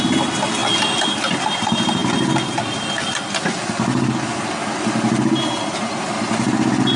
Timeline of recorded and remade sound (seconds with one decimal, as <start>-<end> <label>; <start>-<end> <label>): 0.0-7.0 recorded